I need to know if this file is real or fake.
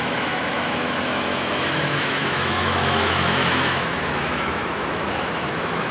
fake